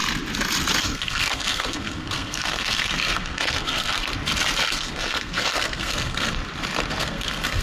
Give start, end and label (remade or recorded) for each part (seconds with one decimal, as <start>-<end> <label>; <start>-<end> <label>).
0.0-0.8 recorded; 0.8-4.1 remade; 4.1-4.7 recorded; 4.7-6.4 remade; 6.4-7.0 recorded; 7.0-7.6 remade